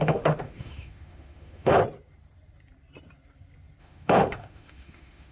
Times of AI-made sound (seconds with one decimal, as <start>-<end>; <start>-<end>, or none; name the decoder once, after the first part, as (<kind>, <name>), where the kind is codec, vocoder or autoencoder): 0.0-1.8 (autoencoder, DAC-VAE); 3.8-5.3